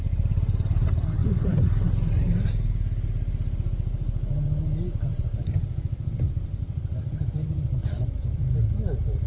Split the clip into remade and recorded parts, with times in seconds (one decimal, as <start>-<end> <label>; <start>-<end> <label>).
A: 0.0-1.2 recorded; 1.2-1.9 remade; 1.9-5.1 recorded; 5.1-7.8 remade; 7.8-9.3 recorded